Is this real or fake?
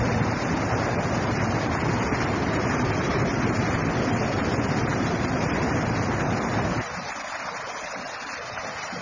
fake